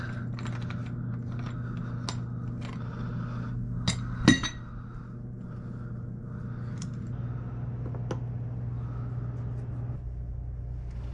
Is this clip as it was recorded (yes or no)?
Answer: yes